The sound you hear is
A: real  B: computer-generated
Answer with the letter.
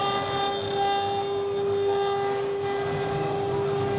A